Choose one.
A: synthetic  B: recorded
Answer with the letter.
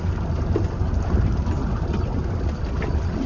B